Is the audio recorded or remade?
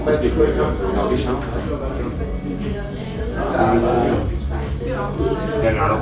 recorded